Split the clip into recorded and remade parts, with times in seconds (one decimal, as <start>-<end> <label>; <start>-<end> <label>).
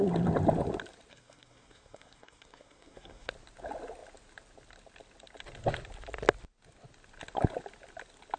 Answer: 0.0-1.1 recorded; 1.1-3.3 remade; 3.3-8.4 recorded